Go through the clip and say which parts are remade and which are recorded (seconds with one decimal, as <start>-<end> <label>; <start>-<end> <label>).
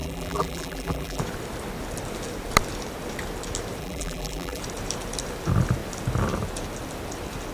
0.0-1.2 remade; 1.2-3.8 recorded; 3.8-4.6 remade; 4.6-7.5 recorded